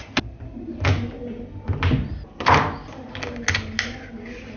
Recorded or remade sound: recorded